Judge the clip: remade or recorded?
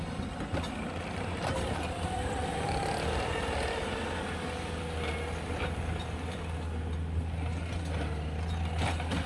recorded